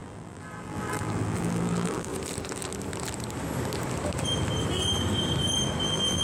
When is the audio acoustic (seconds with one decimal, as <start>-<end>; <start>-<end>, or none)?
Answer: 2.1-5.8